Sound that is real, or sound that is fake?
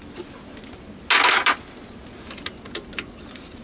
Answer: real